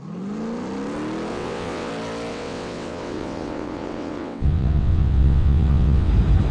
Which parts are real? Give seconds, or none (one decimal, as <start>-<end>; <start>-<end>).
0.0-1.3; 1.9-2.3; 6.1-6.5